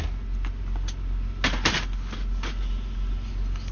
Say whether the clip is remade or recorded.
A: recorded